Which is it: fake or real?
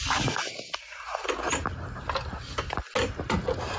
real